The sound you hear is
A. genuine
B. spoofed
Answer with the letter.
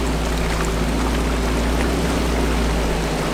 A